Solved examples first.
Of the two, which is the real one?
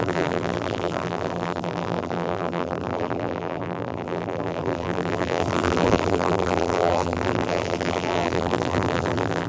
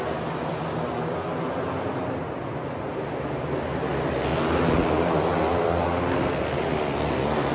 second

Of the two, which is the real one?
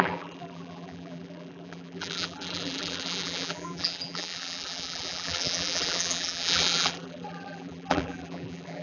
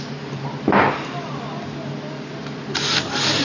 second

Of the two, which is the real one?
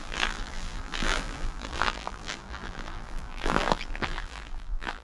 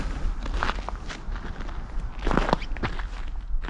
second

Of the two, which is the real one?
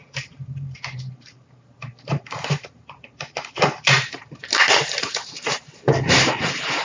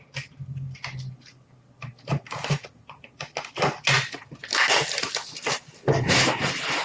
second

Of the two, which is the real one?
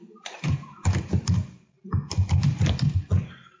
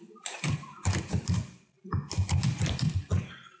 first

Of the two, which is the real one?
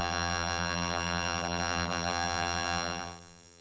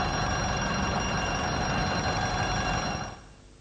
second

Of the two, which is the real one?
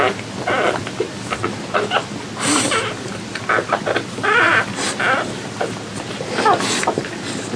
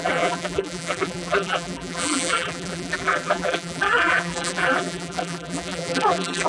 first